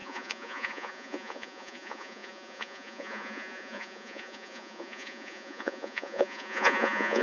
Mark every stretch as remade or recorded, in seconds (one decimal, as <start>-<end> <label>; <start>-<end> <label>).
0.0-7.2 remade